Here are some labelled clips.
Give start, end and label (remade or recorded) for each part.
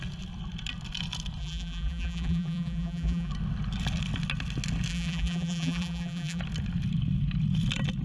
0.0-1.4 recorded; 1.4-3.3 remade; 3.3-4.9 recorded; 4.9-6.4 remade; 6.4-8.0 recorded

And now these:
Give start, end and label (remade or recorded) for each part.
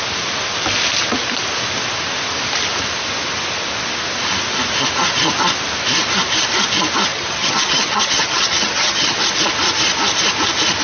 0.0-7.1 recorded; 7.1-9.2 remade; 9.2-10.8 recorded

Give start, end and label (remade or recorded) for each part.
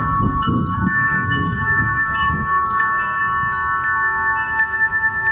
0.0-3.2 remade; 3.2-5.3 recorded